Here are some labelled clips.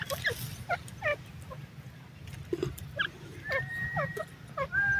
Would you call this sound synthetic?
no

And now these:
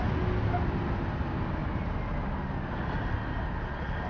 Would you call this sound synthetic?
no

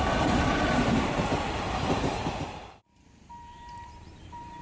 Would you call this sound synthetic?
yes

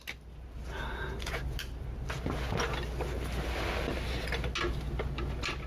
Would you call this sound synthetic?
no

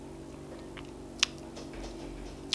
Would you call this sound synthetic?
no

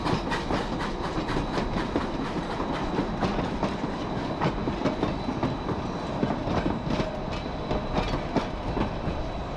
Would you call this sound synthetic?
no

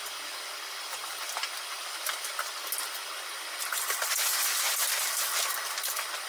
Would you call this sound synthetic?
no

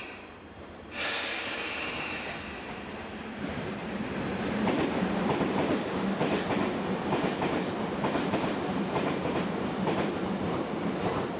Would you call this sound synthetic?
yes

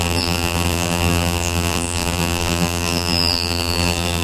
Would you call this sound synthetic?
yes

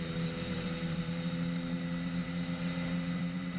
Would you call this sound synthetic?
yes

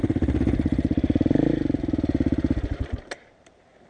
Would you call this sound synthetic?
yes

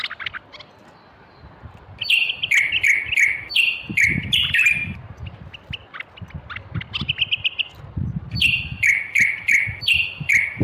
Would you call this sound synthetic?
no